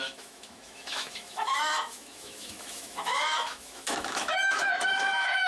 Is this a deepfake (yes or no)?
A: yes